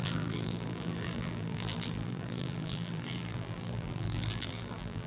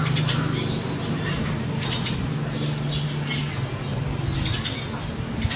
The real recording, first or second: second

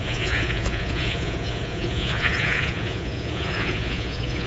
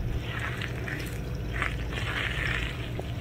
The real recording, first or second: second